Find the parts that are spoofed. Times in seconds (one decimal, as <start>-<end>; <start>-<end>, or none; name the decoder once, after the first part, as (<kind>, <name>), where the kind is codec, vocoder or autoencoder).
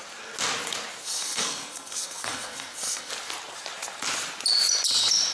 1.0-3.1 (codec, SNAC)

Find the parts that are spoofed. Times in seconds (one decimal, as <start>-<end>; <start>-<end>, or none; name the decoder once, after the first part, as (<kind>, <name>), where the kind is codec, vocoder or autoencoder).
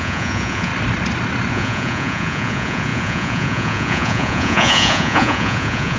0.0-0.7 (vocoder, Vocos); 1.5-6.0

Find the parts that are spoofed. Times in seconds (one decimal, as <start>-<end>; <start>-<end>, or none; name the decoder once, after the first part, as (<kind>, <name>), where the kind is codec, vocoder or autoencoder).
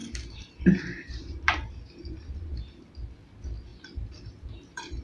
0.0-2.8 (vocoder, BigVGAN v2); 3.7-5.0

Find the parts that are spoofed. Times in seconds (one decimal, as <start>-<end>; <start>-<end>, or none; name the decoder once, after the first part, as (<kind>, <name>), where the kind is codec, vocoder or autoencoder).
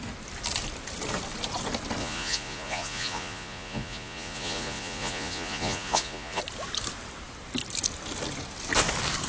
2.0-6.4 (vocoder, Vocos)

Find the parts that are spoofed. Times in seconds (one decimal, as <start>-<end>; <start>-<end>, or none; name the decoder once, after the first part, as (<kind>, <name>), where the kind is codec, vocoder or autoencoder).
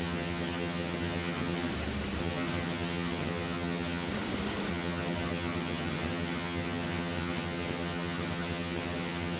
0.0-1.7 (vocoder, HiFi-GAN); 2.2-4.1; 4.7-9.4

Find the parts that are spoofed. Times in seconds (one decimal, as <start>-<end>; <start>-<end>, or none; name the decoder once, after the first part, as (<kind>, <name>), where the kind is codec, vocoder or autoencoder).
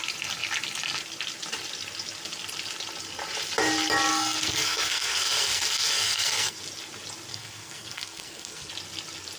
4.1-6.6 (codec, SNAC); 7.3-8.7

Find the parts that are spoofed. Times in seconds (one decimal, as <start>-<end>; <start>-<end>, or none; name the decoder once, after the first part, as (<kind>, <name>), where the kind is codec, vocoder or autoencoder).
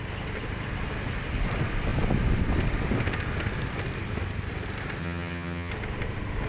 5.0-5.7 (vocoder, HiFi-GAN)